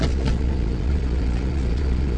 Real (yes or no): no